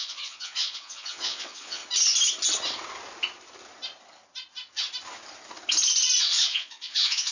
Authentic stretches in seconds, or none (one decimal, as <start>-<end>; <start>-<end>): 1.8-6.2